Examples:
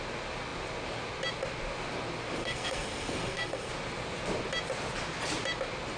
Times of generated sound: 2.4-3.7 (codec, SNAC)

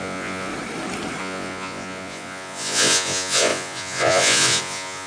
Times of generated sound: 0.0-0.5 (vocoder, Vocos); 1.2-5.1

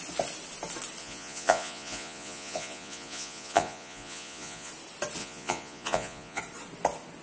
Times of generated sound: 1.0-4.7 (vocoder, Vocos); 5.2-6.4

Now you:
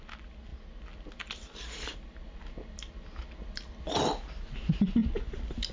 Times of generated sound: none

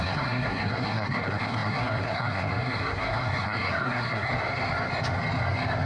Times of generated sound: 0.0-4.3 (codec, SNAC)

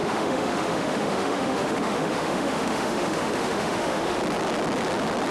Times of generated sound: 0.0-4.2 (autoencoder, DAC-VAE)

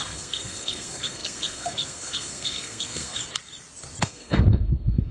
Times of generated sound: 0.0-3.2 (codec, SNAC); 4.0-5.1

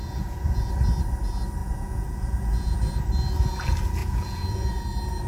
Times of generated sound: 0.0-0.7 (vocoder, Vocos); 1.6-2.8; 4.0-4.7